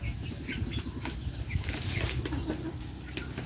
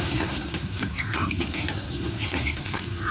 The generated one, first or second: second